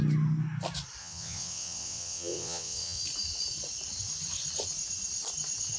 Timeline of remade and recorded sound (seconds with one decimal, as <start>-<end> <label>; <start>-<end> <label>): 0.0-1.0 recorded; 1.0-3.0 remade; 3.0-5.8 recorded